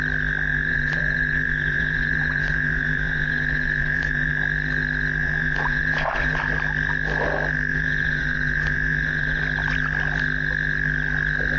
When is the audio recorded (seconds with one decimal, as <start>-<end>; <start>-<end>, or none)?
0.0-0.5; 4.3-5.2; 6.4-7.7; 9.4-11.6